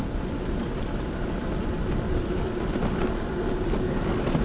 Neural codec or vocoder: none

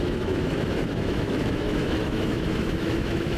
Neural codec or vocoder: autoencoder, DAC-VAE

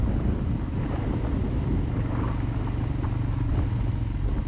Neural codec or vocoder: none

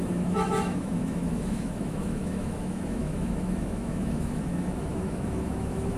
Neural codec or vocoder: autoencoder, DAC-VAE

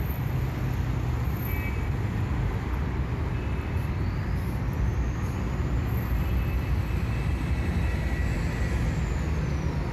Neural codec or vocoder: none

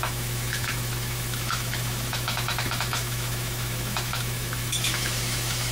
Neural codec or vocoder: autoencoder, DAC-VAE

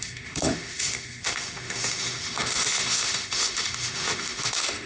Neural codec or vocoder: autoencoder, DAC-VAE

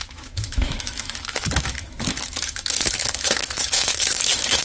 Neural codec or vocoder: autoencoder, DAC-VAE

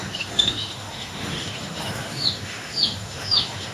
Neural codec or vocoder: autoencoder, DAC-VAE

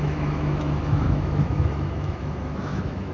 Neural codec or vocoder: autoencoder, DAC-VAE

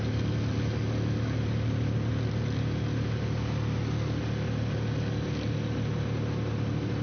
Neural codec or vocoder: none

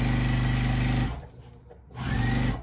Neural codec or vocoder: none